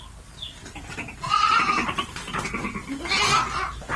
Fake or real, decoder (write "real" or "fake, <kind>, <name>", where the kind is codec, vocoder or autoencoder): real